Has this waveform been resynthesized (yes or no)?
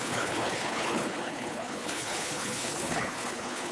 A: yes